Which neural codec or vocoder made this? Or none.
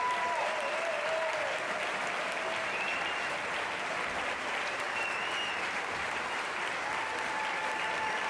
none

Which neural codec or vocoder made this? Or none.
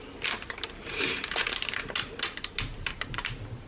none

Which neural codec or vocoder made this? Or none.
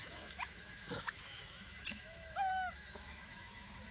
autoencoder, DAC-VAE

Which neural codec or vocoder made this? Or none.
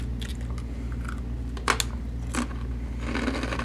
none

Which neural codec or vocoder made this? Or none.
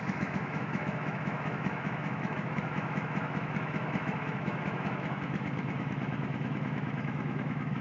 autoencoder, DAC-VAE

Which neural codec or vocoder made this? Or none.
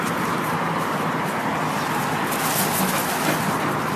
none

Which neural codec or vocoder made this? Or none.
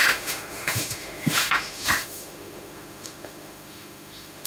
autoencoder, DAC-VAE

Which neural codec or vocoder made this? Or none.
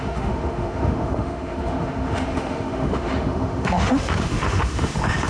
autoencoder, DAC-VAE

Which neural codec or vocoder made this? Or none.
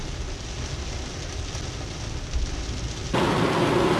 none